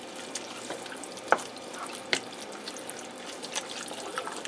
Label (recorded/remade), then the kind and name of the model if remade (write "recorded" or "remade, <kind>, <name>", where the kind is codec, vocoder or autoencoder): recorded